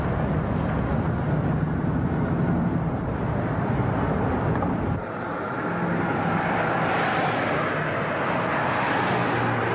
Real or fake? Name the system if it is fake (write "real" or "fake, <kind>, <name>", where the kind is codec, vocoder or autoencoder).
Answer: real